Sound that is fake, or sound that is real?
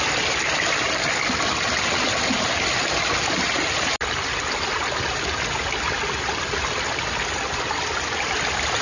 real